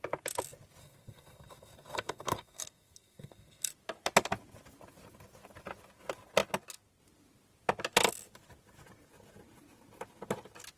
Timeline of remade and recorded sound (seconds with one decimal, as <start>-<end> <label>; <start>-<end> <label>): 0.0-0.8 recorded; 0.8-3.7 remade; 3.7-10.8 recorded